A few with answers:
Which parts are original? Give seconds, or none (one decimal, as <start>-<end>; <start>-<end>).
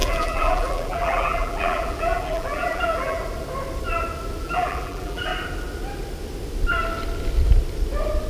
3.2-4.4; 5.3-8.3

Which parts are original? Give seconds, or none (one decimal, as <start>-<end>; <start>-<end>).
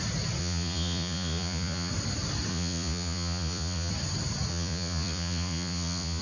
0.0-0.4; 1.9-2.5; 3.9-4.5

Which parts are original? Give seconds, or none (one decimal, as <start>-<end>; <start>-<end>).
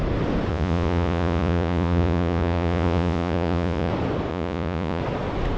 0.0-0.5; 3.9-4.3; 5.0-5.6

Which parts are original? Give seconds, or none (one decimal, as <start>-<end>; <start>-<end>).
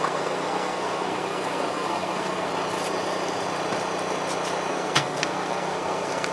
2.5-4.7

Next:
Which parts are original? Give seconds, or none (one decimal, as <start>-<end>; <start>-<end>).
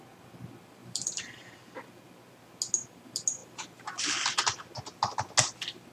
0.0-0.8; 1.9-5.9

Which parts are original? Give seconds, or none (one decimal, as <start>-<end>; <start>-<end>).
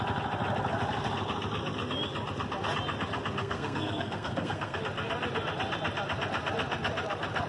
0.0-3.4; 4.8-7.5